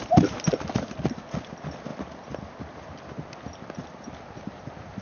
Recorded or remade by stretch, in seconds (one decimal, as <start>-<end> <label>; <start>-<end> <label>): 0.0-5.0 recorded